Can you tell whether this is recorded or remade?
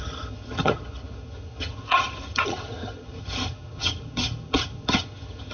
remade